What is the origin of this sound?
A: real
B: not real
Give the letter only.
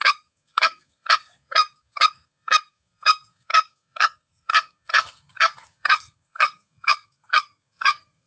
B